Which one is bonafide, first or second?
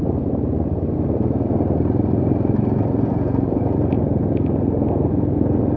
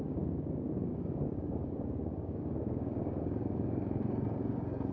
first